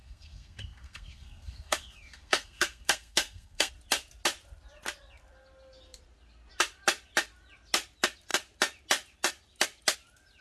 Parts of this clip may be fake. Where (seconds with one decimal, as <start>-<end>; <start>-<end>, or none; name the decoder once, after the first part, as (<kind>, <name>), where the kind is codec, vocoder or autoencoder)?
0.0-3.7 (codec, SNAC)